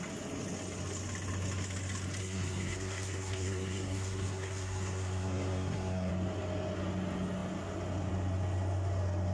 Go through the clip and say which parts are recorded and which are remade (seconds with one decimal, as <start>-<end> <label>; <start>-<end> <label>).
0.0-2.2 recorded; 2.2-6.1 remade; 6.1-9.3 recorded